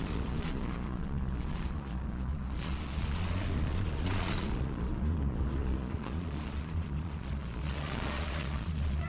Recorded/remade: remade